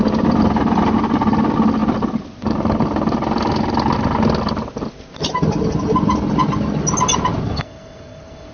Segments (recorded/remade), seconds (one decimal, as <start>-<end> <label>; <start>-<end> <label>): 0.0-7.5 recorded; 7.5-8.5 remade